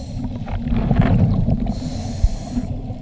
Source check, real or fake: real